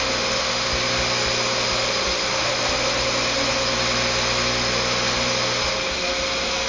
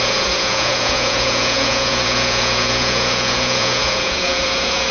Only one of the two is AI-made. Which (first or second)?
second